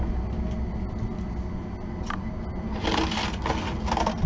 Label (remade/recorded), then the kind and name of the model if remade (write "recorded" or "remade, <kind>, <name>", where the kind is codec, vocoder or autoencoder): recorded